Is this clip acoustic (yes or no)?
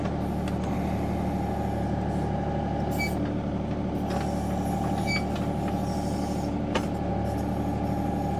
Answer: yes